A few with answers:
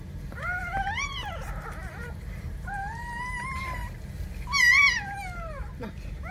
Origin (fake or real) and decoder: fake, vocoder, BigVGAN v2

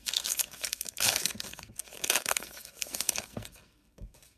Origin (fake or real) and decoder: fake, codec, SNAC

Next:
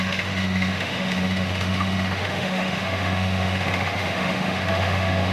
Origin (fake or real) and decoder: fake, autoencoder, DAC-VAE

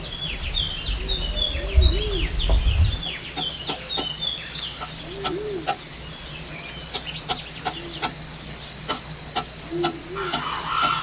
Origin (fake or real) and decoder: real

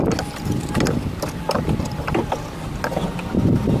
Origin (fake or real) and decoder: real